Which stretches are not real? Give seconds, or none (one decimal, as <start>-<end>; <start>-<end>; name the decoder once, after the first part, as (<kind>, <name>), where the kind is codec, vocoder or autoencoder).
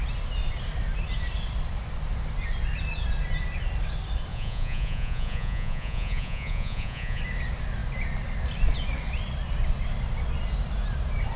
4.3-7.2 (vocoder, Vocos)